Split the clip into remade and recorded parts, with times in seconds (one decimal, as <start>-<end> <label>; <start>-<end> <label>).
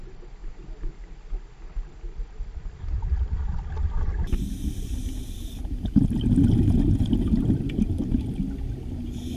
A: 0.0-9.4 recorded